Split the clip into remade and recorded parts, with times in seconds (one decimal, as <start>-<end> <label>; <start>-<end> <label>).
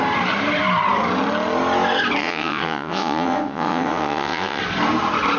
0.0-2.2 recorded; 2.2-4.6 remade; 4.6-5.4 recorded